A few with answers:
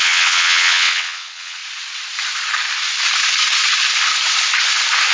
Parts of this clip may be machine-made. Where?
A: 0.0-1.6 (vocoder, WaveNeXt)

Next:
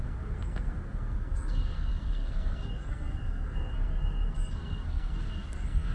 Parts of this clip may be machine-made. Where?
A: 0.0-5.9 (codec, SNAC)